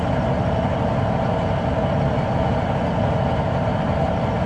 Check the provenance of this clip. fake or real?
real